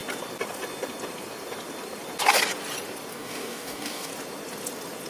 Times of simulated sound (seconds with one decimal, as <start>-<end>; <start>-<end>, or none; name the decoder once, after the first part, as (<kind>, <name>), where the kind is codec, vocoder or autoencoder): 3.1-4.1 (codec, DAC)